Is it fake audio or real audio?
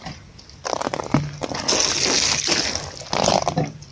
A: real